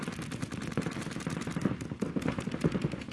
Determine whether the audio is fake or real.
fake